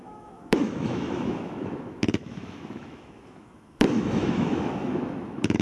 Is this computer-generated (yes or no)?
yes